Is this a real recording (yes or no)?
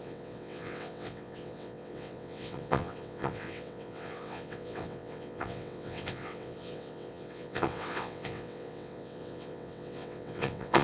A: no